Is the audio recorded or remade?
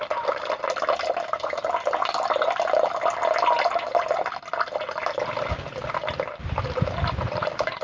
recorded